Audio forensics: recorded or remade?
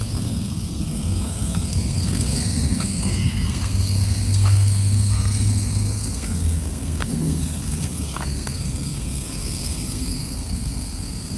remade